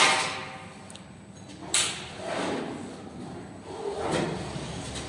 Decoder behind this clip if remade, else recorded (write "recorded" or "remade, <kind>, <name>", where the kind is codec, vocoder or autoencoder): recorded